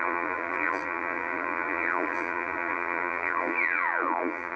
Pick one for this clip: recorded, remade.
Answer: remade